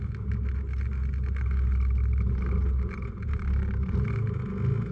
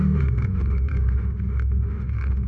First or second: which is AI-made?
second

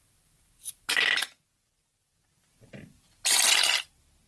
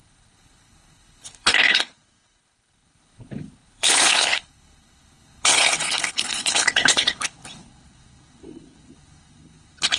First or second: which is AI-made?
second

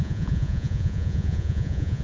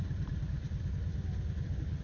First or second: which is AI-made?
first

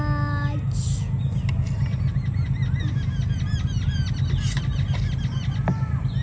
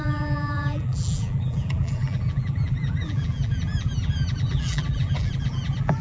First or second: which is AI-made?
second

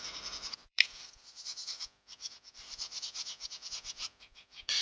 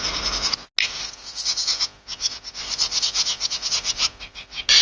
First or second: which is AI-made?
first